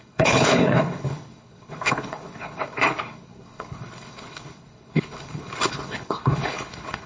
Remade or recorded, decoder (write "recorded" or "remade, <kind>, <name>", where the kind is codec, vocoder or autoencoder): remade, codec, HILCodec